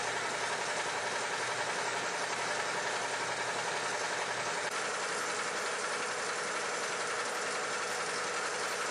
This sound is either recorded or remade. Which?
recorded